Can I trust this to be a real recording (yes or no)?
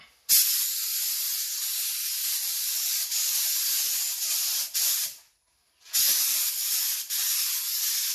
yes